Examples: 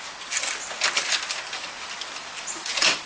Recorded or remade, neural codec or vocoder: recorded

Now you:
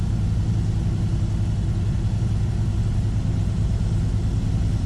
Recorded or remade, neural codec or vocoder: recorded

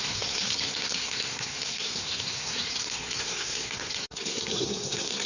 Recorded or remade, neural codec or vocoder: remade, codec, SNAC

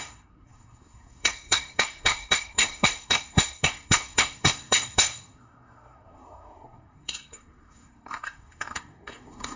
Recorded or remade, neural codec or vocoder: remade, codec, SNAC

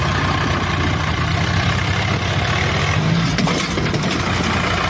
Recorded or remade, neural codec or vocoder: recorded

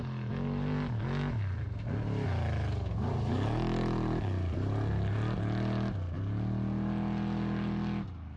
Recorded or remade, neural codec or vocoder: recorded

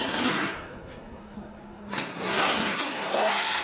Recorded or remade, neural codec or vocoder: remade, codec, SNAC